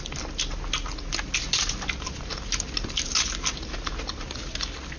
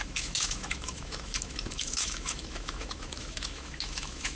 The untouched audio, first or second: first